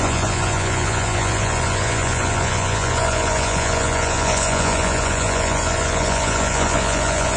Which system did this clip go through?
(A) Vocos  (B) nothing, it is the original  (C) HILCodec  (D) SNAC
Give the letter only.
A